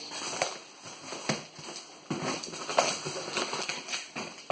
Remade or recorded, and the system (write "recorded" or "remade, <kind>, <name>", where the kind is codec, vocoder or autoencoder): recorded